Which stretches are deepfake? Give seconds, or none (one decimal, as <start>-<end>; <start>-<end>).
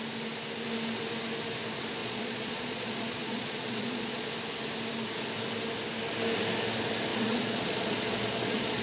2.0-4.3; 7.1-8.8